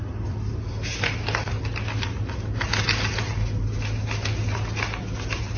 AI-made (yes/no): no